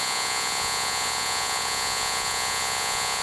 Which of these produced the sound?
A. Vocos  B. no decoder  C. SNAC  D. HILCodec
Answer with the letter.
A